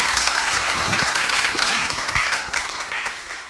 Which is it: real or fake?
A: fake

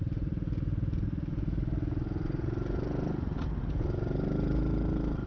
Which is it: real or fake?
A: real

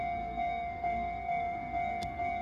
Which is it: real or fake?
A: fake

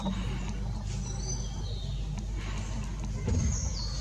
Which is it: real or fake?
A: real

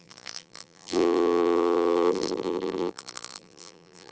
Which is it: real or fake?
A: fake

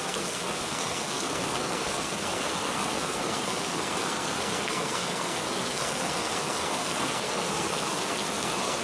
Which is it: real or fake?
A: fake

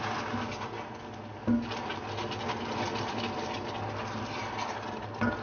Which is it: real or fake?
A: real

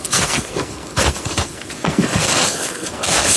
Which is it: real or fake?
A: fake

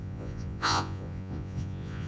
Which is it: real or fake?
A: fake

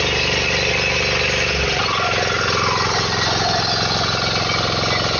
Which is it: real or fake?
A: real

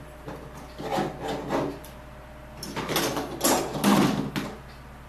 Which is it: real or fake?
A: real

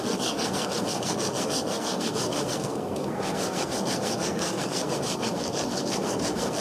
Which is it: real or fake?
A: fake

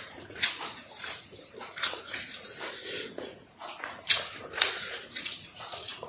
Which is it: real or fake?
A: fake